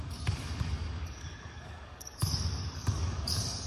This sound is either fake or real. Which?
fake